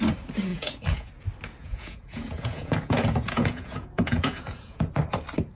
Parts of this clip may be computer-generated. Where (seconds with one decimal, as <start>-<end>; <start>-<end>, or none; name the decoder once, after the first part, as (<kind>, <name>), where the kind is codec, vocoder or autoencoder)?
0.5-1.1 (vocoder, Vocos); 1.6-5.0